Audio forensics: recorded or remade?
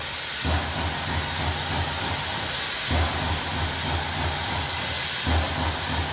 recorded